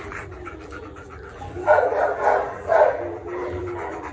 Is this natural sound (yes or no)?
no